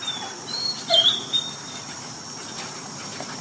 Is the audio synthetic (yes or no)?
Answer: yes